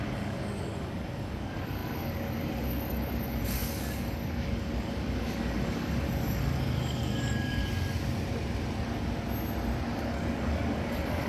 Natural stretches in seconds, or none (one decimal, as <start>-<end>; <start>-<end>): 7.6-9.9